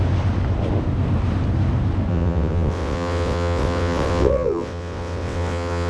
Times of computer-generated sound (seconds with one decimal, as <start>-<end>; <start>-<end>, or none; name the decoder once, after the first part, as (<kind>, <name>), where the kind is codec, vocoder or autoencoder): 2.1-5.9 (vocoder, WaveNeXt)